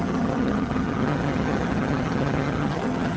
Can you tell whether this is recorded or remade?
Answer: remade